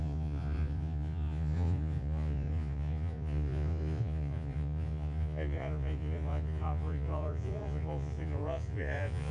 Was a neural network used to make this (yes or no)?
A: yes